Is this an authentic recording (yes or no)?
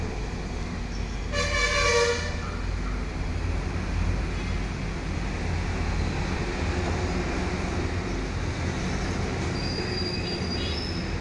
yes